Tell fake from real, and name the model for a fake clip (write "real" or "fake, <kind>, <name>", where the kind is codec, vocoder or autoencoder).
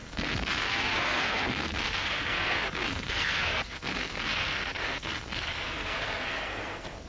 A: fake, codec, SNAC